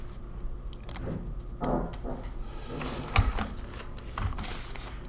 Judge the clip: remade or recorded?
recorded